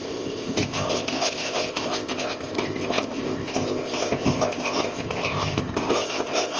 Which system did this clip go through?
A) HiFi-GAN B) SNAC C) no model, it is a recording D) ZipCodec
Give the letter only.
D